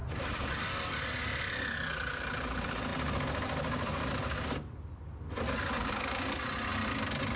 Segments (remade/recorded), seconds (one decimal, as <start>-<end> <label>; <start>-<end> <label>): 0.0-0.5 remade; 0.5-5.8 recorded; 5.8-6.3 remade; 6.3-7.4 recorded